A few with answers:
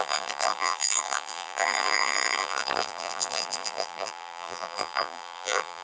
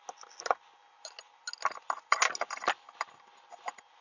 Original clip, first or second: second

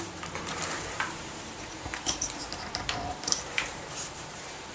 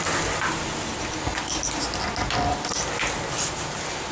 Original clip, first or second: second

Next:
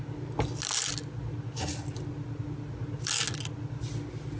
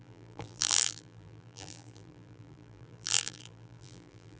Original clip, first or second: first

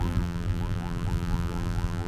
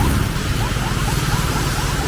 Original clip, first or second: second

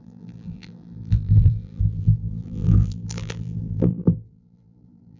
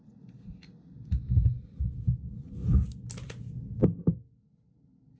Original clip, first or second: second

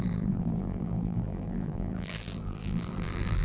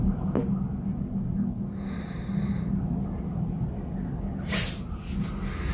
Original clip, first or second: second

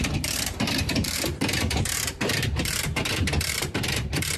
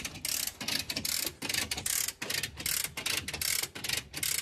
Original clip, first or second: second